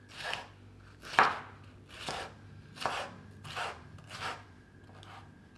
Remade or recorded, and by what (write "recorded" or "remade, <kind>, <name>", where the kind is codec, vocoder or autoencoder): recorded